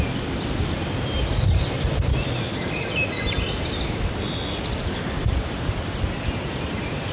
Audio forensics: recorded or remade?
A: recorded